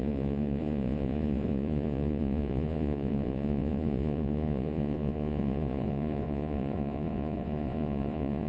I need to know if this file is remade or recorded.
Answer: remade